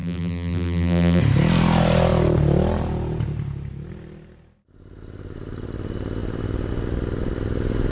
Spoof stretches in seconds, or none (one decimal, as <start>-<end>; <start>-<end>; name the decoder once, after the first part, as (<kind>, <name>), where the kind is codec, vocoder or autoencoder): 0.0-1.2 (vocoder, BigVGAN v2)